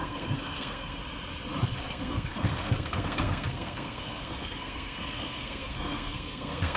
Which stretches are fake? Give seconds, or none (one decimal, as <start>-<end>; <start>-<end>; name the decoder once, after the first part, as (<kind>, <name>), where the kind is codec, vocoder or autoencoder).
0.0-1.0 (codec, SNAC); 1.9-6.8